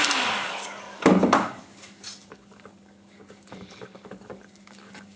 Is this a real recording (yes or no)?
no